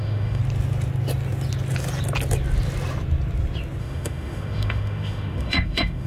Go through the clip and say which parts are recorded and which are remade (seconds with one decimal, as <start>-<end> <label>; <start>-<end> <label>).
0.0-0.4 remade; 0.4-3.8 recorded; 3.8-6.1 remade